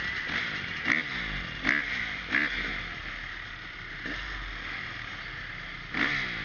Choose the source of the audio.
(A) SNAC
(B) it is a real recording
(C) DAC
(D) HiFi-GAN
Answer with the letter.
B